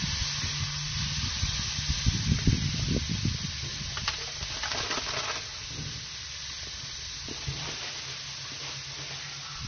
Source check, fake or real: real